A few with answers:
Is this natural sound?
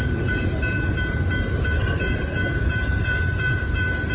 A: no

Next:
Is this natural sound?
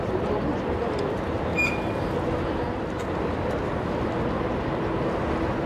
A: yes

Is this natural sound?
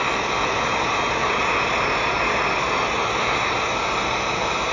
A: yes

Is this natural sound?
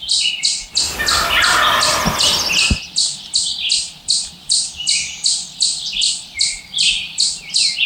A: yes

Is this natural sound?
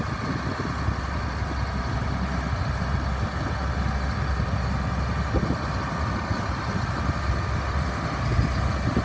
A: yes